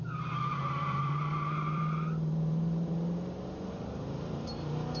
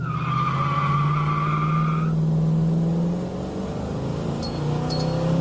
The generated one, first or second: first